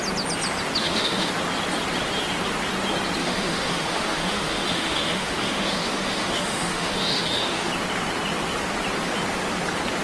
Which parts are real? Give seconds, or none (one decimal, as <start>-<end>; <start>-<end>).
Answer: 0.0-0.8; 1.3-3.2; 7.7-10.0